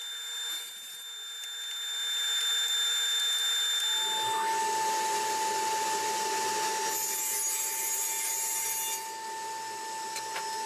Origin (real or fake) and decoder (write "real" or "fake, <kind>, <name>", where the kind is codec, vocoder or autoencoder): real